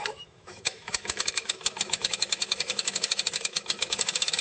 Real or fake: fake